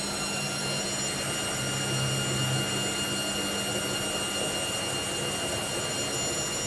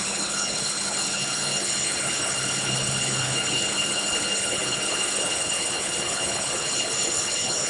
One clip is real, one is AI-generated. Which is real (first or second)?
first